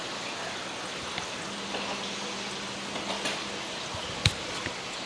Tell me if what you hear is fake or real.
real